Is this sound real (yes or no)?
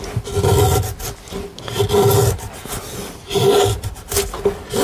yes